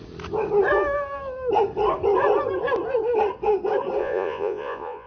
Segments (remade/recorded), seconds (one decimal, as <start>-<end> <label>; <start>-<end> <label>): 0.0-4.0 recorded; 4.0-5.1 remade